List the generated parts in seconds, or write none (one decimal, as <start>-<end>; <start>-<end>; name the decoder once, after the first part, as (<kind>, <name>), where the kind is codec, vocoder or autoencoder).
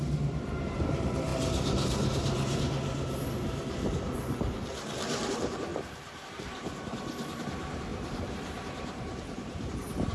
0.0-5.7 (vocoder, BigVGAN v2); 6.3-10.1